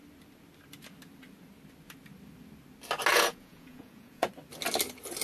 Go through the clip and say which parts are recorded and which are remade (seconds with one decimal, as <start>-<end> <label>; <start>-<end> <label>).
0.0-3.1 recorded; 3.1-4.3 remade; 4.3-5.2 recorded